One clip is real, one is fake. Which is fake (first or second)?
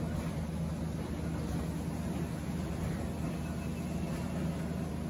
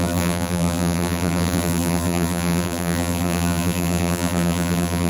second